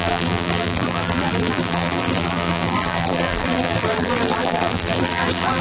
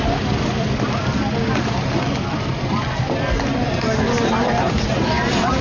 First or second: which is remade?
first